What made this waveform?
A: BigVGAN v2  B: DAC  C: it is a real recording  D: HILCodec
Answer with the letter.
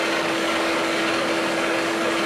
B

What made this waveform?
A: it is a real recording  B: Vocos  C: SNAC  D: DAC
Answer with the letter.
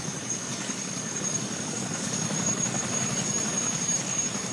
D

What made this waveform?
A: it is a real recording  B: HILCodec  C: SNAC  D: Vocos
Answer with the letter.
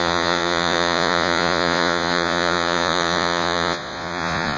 D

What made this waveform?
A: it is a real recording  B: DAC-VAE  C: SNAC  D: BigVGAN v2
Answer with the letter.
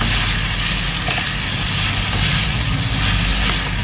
A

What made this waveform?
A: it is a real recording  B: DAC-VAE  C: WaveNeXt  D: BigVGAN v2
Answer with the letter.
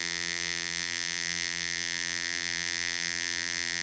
D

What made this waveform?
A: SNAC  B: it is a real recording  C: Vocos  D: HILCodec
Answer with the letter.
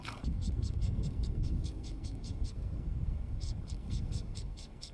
A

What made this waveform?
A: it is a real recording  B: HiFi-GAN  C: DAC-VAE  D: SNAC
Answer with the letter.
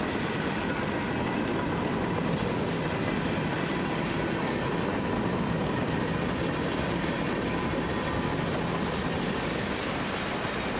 A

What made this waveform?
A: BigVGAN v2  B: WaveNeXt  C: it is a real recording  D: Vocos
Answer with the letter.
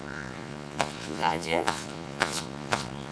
D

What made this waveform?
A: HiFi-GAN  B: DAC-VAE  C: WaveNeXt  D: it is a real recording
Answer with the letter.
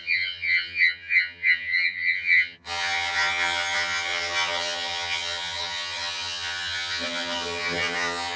A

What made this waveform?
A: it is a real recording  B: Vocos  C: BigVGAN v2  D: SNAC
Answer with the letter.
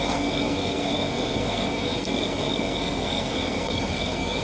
D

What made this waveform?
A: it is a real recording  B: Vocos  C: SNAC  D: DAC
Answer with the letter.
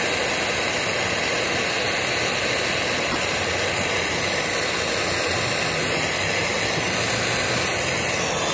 A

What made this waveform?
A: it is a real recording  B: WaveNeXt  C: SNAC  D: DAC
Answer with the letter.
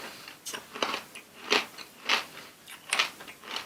A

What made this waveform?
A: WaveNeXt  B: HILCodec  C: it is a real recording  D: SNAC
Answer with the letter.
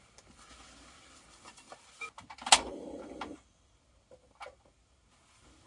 C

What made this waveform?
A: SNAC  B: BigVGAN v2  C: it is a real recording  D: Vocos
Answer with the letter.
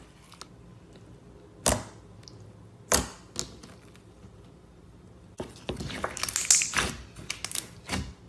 C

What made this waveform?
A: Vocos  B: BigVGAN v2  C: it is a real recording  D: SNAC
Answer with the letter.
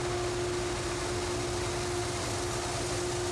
C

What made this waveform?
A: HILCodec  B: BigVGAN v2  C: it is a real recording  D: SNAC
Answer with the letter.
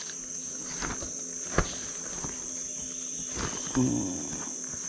C